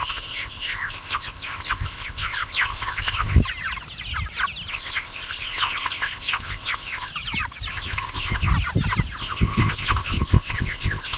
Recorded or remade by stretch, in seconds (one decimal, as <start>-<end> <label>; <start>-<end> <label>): 0.0-3.4 remade; 3.4-4.7 recorded; 4.7-7.1 remade; 7.1-7.7 recorded; 7.7-8.5 remade; 8.5-9.2 recorded; 9.2-11.2 remade